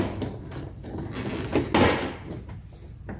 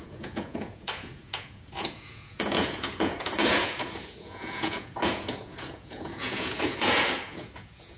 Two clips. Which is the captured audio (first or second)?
first